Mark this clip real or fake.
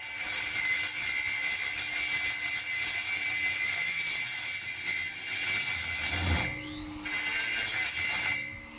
real